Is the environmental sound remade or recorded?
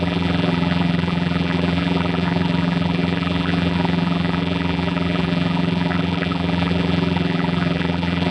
remade